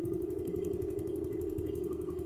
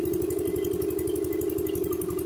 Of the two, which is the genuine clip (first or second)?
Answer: second